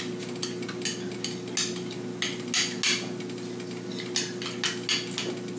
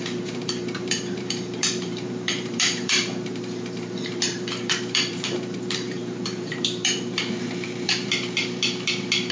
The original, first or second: first